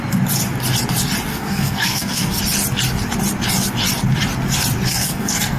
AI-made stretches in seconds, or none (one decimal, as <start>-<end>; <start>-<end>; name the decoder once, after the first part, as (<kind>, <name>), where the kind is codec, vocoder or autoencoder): 1.3-2.4 (codec, SNAC); 4.9-5.6